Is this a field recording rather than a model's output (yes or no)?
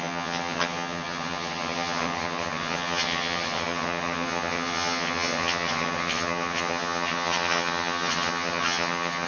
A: no